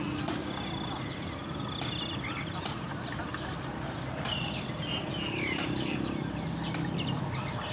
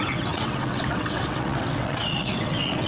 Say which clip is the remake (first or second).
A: second